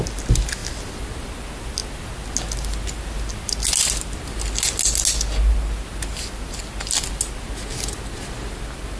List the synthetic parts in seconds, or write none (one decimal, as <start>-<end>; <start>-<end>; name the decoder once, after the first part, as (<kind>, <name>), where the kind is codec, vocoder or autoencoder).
none